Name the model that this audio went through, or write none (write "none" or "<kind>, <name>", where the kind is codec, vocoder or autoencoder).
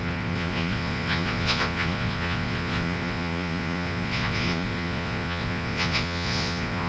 vocoder, Vocos